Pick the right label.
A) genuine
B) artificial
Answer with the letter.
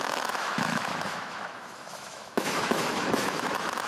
B